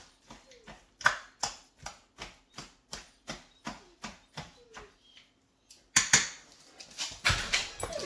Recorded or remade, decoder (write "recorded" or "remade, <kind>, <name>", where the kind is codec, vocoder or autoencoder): recorded